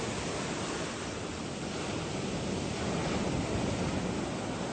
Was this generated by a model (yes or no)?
no